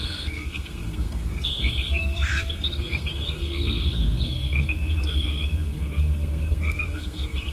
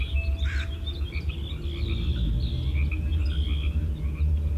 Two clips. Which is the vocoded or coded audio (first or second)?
first